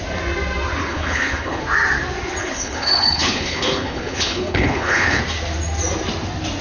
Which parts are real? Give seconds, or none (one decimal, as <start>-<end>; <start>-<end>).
0.0-0.8; 1.6-2.4; 5.2-6.6

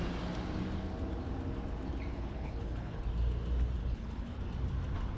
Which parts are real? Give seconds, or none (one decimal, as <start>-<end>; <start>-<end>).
0.0-2.1; 3.0-3.8; 4.4-5.2

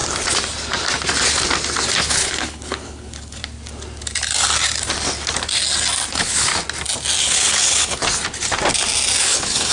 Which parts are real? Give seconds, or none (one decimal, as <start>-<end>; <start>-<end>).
0.0-2.0; 3.4-6.1; 6.5-7.2; 8.0-9.2

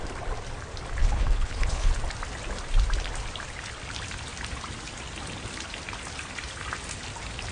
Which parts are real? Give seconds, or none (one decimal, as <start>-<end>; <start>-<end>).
0.0-1.0; 1.9-7.5

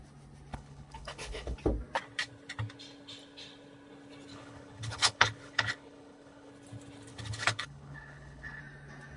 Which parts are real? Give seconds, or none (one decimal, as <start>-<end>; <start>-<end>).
0.0-0.5; 1.6-4.3; 6.5-7.1; 8.6-9.2